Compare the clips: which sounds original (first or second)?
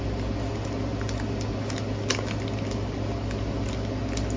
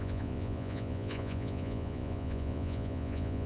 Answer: first